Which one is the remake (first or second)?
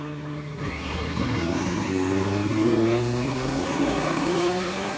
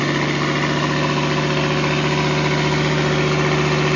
first